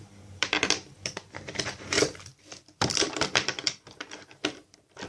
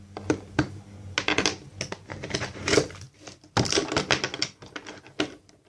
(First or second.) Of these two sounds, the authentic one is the second